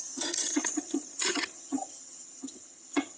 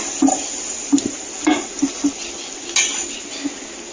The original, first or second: second